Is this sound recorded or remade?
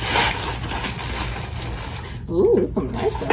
recorded